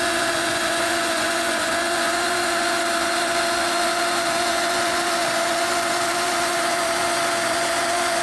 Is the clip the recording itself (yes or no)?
no